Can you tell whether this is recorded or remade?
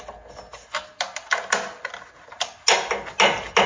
recorded